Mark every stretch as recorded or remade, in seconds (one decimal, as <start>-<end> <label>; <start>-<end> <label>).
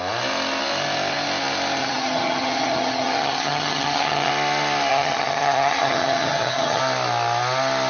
0.0-1.8 recorded; 1.8-4.3 remade; 4.3-4.9 recorded; 4.9-6.8 remade; 6.8-7.9 recorded